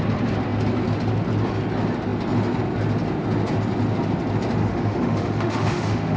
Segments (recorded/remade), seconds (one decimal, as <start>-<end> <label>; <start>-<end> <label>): 0.0-4.6 recorded; 4.6-6.2 remade